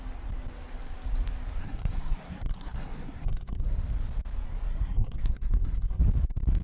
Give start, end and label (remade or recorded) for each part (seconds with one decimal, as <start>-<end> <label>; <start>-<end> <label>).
0.0-1.6 recorded; 1.6-3.8 remade; 3.8-4.7 recorded; 4.7-6.0 remade; 6.0-6.6 recorded